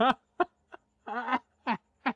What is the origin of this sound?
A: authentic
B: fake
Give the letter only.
A